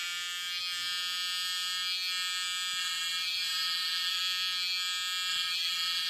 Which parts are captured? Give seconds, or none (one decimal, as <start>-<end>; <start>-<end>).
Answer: 0.0-2.8; 4.2-5.3